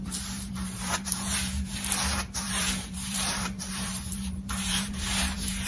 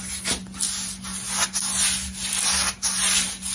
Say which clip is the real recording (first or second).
second